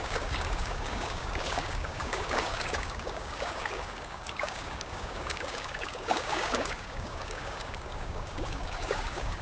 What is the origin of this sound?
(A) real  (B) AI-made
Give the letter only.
B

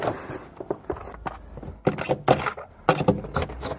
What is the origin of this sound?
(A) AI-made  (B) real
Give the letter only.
B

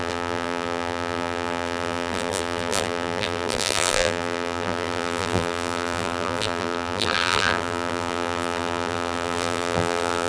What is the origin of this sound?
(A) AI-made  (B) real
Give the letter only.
A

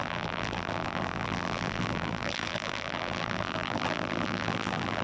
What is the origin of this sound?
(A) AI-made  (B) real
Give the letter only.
A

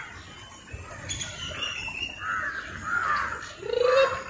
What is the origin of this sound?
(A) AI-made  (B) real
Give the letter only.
B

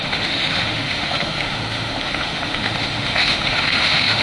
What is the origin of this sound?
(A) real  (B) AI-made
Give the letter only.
B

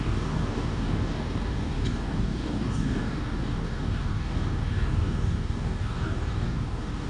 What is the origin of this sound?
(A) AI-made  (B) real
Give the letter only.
A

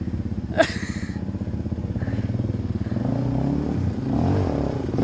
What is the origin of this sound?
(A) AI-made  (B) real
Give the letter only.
B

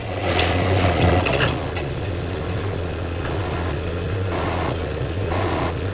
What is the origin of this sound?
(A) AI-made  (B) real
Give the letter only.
A